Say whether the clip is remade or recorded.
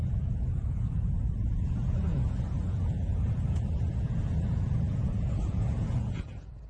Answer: remade